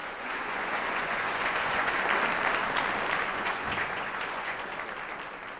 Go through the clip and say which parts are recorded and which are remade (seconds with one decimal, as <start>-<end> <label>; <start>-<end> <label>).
0.0-1.9 remade; 1.9-3.3 recorded; 3.3-4.7 remade; 4.7-5.6 recorded

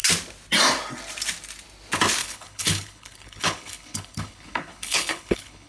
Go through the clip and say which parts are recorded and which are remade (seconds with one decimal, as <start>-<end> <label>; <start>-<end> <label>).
0.0-2.2 recorded; 2.2-5.7 remade

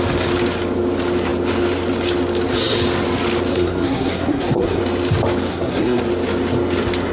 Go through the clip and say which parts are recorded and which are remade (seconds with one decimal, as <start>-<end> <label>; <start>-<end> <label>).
0.0-3.5 recorded; 3.5-4.8 remade; 4.8-5.5 recorded; 5.5-6.0 remade; 6.0-7.1 recorded

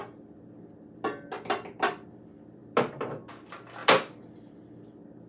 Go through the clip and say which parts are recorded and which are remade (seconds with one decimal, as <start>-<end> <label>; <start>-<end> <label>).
0.0-5.3 recorded